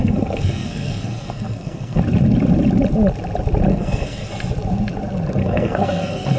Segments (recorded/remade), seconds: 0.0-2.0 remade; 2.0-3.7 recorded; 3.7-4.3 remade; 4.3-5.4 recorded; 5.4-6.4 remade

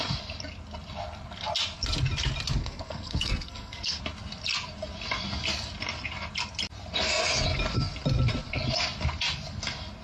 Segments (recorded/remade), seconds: 0.0-2.6 recorded; 2.6-4.0 remade; 4.0-10.0 recorded

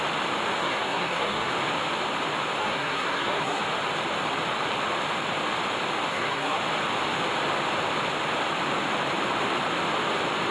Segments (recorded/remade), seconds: 0.0-0.6 recorded; 0.6-1.5 remade; 1.5-2.6 recorded; 2.6-3.6 remade; 3.6-6.1 recorded; 6.1-6.6 remade; 6.6-10.5 recorded